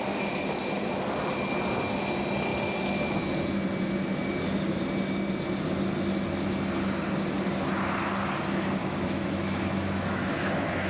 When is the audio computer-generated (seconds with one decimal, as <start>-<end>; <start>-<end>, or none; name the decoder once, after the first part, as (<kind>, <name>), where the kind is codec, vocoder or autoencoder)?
8.8-10.3 (autoencoder, DAC-VAE)